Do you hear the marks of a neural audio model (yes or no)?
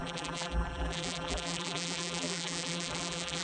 yes